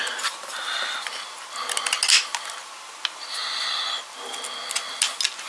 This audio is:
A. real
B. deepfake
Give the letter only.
A